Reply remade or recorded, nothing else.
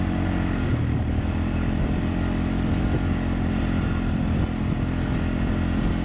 recorded